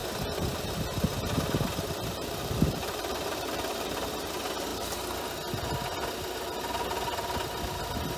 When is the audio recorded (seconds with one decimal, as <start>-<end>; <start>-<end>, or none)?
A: 0.0-2.1; 4.1-8.2